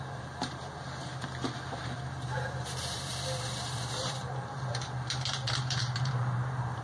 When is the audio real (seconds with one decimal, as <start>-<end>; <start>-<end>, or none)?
none